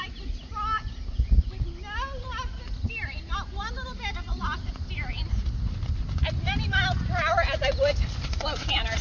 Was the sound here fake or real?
real